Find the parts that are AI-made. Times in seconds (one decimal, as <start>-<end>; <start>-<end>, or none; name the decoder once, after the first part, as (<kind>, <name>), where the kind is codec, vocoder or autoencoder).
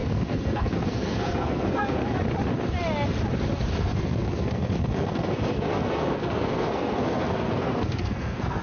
0.0-2.0 (codec, SNAC); 3.8-8.6